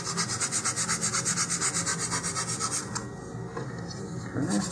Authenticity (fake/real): real